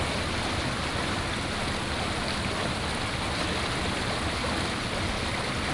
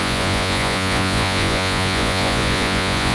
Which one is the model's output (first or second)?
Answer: second